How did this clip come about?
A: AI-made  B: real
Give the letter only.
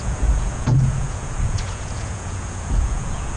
A